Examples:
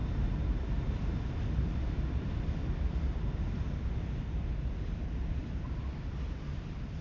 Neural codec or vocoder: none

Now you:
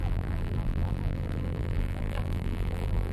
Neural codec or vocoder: vocoder, BigVGAN v2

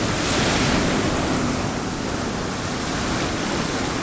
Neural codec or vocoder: none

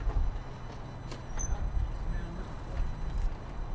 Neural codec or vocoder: none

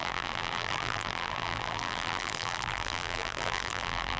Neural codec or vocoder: vocoder, BigVGAN v2